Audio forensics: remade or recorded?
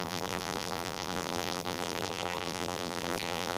remade